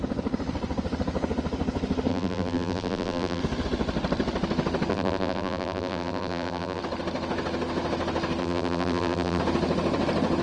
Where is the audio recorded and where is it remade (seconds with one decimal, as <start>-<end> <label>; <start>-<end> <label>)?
0.0-2.1 recorded; 2.1-3.4 remade; 3.4-4.9 recorded; 4.9-6.8 remade; 6.8-8.4 recorded; 8.4-9.4 remade; 9.4-10.4 recorded